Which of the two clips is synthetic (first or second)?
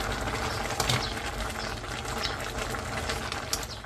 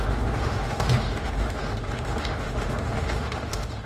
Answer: second